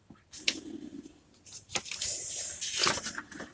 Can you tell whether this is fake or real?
real